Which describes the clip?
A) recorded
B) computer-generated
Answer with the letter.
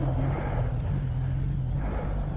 A